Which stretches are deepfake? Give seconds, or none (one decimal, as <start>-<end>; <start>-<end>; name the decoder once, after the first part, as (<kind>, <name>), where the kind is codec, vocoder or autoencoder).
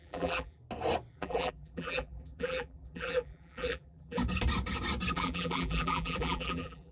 0.0-0.6 (vocoder, BigVGAN v2); 1.1-4.2; 5.1-6.9